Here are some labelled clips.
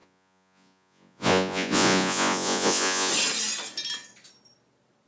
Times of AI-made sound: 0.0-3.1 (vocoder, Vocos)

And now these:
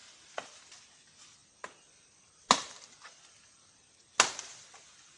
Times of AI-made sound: none

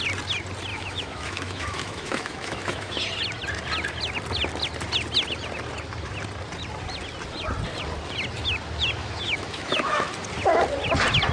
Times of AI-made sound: 0.7-3.0 (autoencoder, DAC-VAE); 9.0-10.1

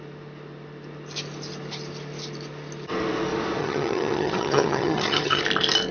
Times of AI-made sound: 3.6-5.4 (vocoder, HiFi-GAN)

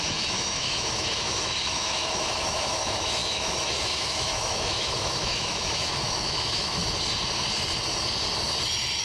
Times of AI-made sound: 0.0-6.8 (autoencoder, DAC-VAE)

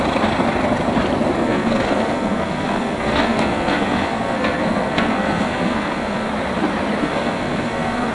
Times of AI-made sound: 1.4-6.3 (codec, SNAC); 7.0-8.1

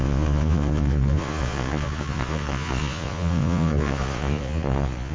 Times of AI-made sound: 0.0-5.1 (vocoder, Vocos)

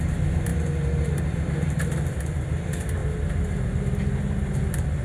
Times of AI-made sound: none